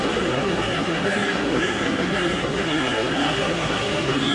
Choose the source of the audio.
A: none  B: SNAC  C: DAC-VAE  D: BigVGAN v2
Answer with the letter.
B